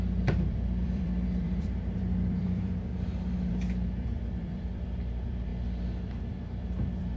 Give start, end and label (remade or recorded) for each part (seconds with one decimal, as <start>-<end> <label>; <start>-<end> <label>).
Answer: 0.0-2.9 remade; 2.9-3.5 recorded; 3.5-5.5 remade; 5.5-6.2 recorded; 6.2-7.2 remade